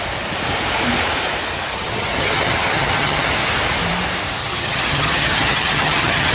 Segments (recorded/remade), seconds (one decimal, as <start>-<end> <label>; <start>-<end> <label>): 0.0-1.7 recorded; 1.7-3.3 remade; 3.3-4.4 recorded; 4.4-6.3 remade